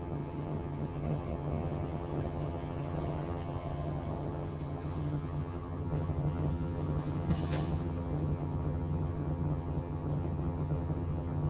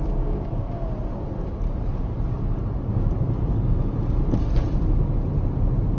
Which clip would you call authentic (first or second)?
second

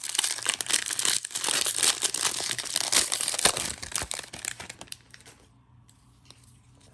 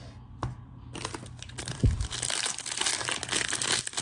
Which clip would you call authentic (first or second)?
second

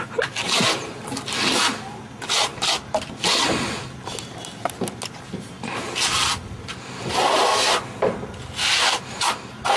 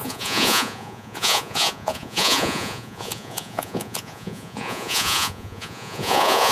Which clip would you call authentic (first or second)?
first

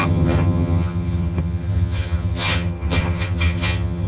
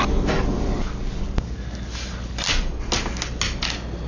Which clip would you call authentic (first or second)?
second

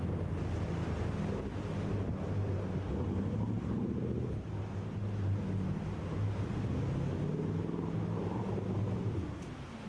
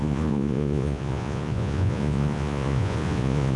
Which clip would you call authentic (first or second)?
first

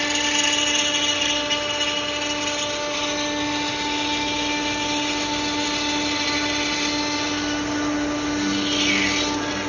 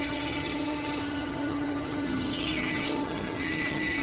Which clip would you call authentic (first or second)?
first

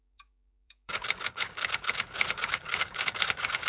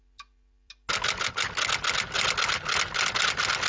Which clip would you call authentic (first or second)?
second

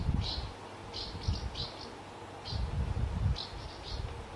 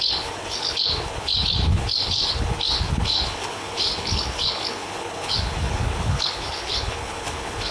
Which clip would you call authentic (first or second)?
first